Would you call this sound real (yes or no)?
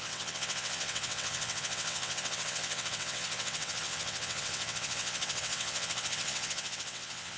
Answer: no